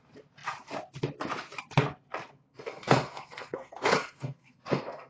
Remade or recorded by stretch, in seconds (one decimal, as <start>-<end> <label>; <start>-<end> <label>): 0.0-2.5 recorded; 2.5-5.1 remade

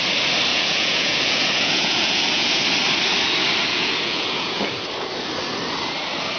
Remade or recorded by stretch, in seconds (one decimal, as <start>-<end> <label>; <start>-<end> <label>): 0.0-0.5 recorded; 0.5-2.6 remade; 2.6-3.7 recorded; 3.7-4.6 remade; 4.6-6.4 recorded

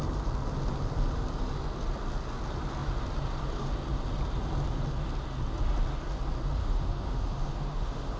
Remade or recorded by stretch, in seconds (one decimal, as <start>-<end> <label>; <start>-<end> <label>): 0.0-6.6 recorded; 6.6-8.2 remade

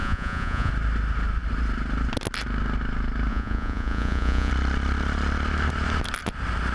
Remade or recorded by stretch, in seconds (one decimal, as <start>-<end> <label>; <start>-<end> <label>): 0.0-0.7 remade; 0.7-3.3 recorded; 3.3-4.5 remade; 4.5-6.7 recorded

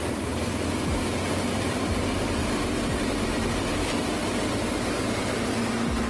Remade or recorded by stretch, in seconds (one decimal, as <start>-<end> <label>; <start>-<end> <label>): 0.0-0.5 remade; 0.5-2.4 recorded; 2.4-4.0 remade; 4.0-6.1 recorded

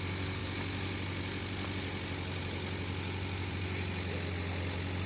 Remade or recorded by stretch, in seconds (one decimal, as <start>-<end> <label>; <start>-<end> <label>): 0.0-5.1 recorded

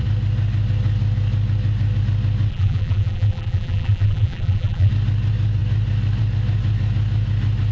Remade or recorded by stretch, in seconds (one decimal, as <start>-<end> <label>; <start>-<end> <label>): 0.0-2.5 recorded; 2.5-4.9 remade; 4.9-7.7 recorded

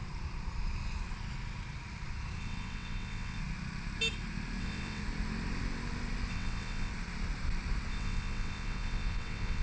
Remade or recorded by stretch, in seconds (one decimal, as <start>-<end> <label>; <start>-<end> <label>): 0.0-2.4 recorded; 2.4-3.4 remade; 3.4-4.6 recorded; 4.6-5.0 remade; 5.0-6.3 recorded; 6.3-6.9 remade; 6.9-7.9 recorded; 7.9-9.6 remade